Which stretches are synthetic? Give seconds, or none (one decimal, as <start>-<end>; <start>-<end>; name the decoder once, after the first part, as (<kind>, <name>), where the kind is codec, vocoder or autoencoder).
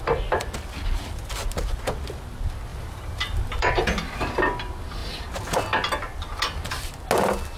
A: 2.7-3.7 (vocoder, BigVGAN v2)